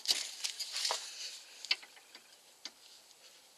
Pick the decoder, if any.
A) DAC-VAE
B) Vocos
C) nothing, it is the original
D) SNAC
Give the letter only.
C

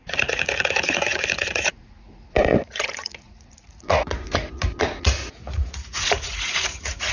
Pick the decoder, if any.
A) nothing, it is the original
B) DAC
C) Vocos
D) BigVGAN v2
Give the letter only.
C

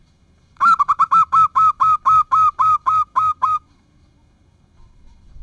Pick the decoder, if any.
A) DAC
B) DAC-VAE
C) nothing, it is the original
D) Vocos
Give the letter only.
B